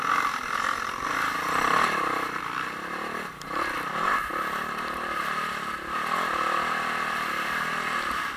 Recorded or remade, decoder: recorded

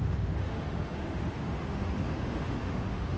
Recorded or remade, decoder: remade, autoencoder, DAC-VAE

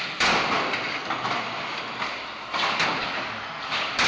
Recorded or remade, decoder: recorded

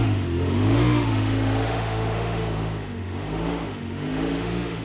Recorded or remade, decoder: remade, autoencoder, DAC-VAE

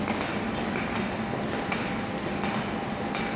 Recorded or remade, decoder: recorded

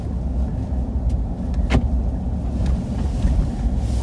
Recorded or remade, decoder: recorded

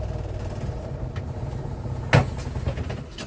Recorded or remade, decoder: recorded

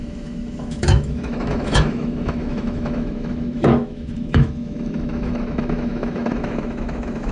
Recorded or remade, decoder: remade, autoencoder, DAC-VAE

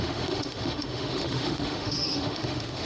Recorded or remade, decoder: remade, autoencoder, DAC-VAE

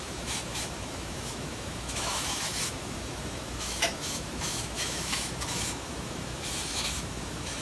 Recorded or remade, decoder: remade, autoencoder, DAC-VAE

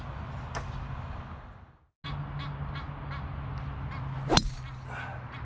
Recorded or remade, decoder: recorded